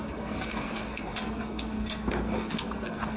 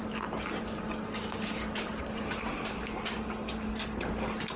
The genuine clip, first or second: second